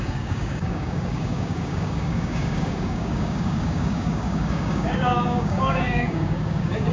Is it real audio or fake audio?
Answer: fake